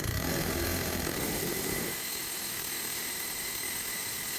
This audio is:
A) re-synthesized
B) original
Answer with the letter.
A